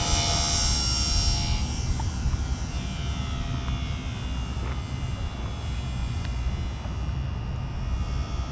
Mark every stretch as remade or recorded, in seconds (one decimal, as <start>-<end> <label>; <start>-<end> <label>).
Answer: 0.0-6.0 recorded; 6.0-6.5 remade; 6.5-8.5 recorded